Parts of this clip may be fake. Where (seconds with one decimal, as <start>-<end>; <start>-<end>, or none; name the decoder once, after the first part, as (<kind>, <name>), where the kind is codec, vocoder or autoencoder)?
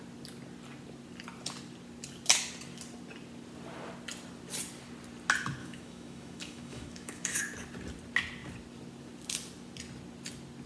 5.6-7.4 (autoencoder, DAC-VAE)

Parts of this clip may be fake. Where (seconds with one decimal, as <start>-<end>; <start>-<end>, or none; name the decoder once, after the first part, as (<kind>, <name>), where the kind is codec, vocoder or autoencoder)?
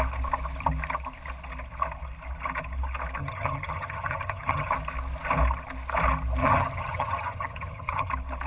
3.2-4.7 (vocoder, HiFi-GAN); 6.4-8.1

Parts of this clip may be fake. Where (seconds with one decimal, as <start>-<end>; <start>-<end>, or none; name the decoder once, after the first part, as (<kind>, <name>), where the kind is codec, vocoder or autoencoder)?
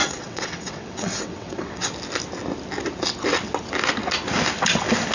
0.0-1.9 (vocoder, WaveNeXt)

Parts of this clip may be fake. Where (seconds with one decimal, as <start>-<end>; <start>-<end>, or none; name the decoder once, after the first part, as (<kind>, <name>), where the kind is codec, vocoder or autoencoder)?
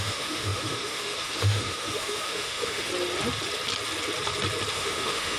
0.0-2.9 (autoencoder, DAC-VAE); 4.7-5.4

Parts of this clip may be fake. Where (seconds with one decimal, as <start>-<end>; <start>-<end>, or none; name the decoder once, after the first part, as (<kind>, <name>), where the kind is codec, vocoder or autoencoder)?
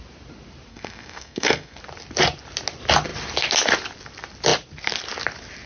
0.7-1.8 (codec, SNAC)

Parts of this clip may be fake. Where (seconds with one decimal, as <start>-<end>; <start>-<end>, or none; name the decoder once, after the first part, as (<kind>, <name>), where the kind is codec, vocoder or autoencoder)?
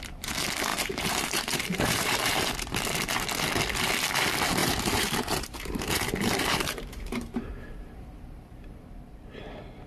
0.7-2.5 (vocoder, BigVGAN v2); 4.6-9.4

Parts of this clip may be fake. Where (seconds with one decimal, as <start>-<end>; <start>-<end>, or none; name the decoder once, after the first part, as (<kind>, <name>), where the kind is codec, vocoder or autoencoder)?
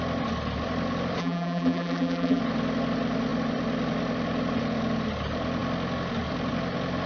1.2-2.4 (vocoder, BigVGAN v2)